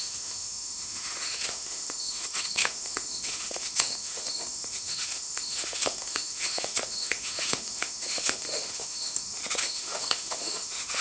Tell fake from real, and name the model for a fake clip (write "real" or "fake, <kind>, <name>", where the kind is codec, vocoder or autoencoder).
fake, autoencoder, DAC-VAE